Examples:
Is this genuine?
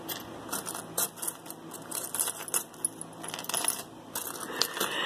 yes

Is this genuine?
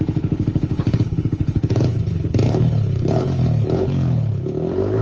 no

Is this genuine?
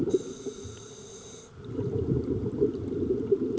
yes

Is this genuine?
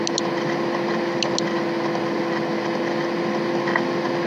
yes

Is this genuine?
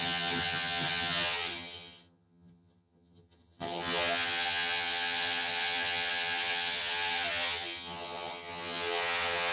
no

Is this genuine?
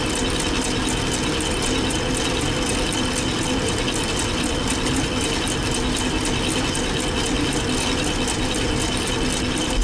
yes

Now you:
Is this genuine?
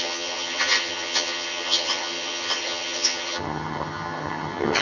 no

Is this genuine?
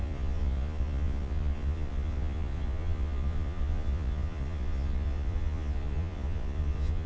no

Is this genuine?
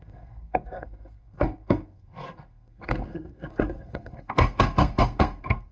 no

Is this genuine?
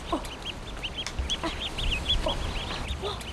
yes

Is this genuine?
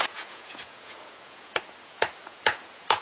no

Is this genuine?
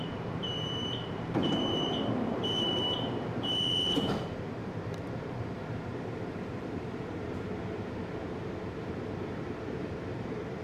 no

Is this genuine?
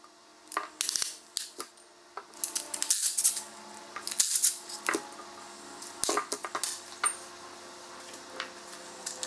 yes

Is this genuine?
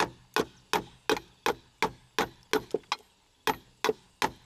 yes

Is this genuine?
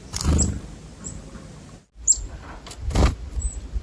yes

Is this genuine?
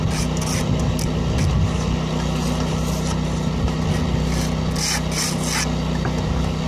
yes